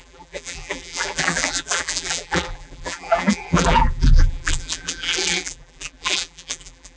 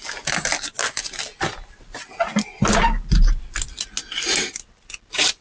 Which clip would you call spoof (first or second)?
first